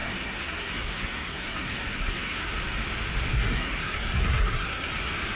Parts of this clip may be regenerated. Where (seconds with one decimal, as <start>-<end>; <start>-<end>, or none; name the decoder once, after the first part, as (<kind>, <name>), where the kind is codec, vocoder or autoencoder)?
0.0-2.5 (codec, SNAC); 3.3-4.9